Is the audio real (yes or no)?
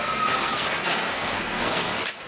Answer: no